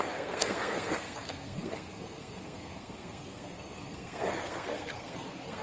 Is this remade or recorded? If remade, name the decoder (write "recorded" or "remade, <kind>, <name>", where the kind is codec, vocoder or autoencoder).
remade, codec, SNAC